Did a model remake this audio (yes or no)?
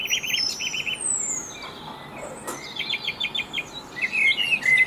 no